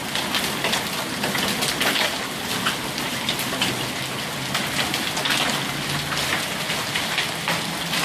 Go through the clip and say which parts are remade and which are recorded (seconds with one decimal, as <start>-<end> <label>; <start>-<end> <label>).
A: 0.0-8.0 recorded